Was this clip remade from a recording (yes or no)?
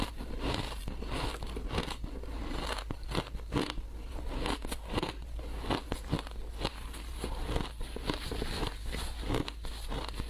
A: no